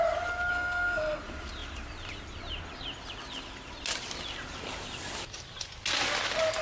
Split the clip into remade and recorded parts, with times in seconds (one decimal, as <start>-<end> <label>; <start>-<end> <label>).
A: 0.0-0.5 recorded; 0.5-1.2 remade; 1.2-6.6 recorded